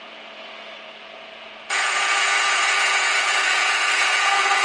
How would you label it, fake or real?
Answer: fake